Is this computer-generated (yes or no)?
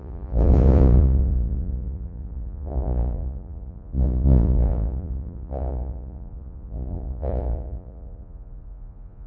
yes